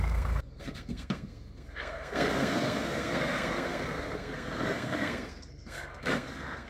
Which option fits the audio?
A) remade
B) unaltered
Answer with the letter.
A